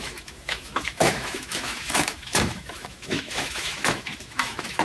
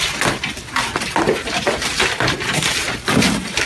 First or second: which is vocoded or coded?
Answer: first